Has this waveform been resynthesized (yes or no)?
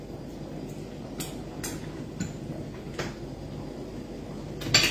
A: no